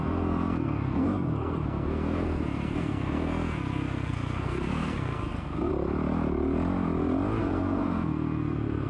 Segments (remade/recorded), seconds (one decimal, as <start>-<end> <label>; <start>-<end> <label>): 0.0-5.7 remade; 5.7-7.4 recorded; 7.4-8.9 remade